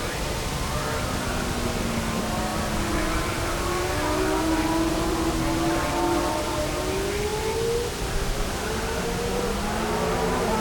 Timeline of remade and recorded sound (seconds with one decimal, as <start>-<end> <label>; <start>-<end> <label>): 0.0-10.6 recorded